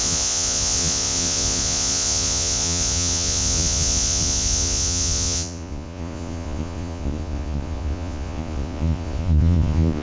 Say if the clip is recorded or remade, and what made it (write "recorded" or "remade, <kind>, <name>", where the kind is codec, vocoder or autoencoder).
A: remade, vocoder, Vocos